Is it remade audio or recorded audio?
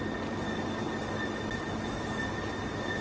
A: recorded